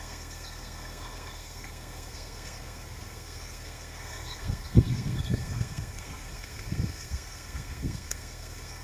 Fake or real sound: fake